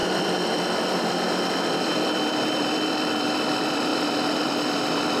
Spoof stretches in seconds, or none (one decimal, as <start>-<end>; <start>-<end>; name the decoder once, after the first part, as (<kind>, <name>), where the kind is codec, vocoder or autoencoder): 0.0-5.2 (vocoder, BigVGAN v2)